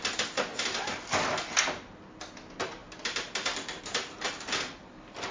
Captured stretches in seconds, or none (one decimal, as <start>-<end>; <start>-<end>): 0.0-5.3